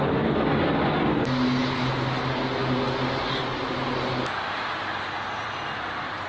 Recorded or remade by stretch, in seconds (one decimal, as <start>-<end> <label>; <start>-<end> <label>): 0.0-6.3 recorded